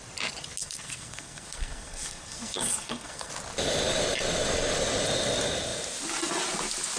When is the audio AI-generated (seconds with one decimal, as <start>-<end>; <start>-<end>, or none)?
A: 0.6-3.3